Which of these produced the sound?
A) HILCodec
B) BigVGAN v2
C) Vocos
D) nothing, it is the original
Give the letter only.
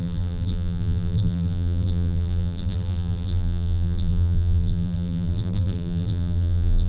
B